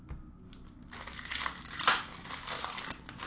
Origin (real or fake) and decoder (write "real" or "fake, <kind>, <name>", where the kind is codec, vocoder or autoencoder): real